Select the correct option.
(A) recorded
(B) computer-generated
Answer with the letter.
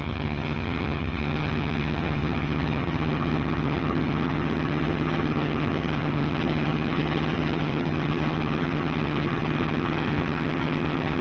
B